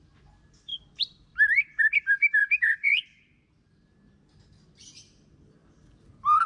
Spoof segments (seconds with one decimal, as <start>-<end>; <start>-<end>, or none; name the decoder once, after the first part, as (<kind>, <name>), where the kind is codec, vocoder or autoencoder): 0.7-1.8 (vocoder, BigVGAN v2); 2.4-3.2; 5.6-6.5